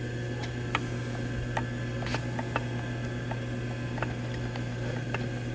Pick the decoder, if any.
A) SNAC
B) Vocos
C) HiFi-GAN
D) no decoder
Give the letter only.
D